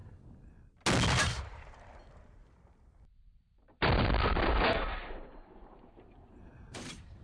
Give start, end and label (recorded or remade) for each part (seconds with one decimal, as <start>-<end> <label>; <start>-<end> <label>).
0.0-1.4 recorded; 1.4-7.2 remade